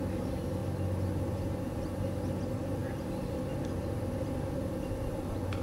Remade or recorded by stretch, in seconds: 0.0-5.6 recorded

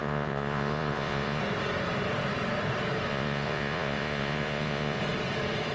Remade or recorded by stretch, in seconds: 0.0-1.4 remade; 1.4-3.1 recorded; 3.1-5.0 remade; 5.0-5.7 recorded